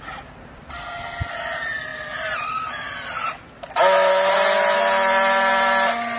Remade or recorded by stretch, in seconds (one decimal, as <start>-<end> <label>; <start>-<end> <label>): 0.0-6.2 recorded